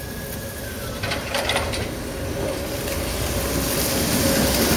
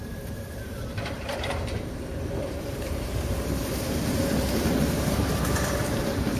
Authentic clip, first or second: first